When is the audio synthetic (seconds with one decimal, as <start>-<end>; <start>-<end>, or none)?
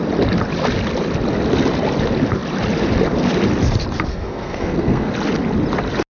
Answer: 4.1-5.1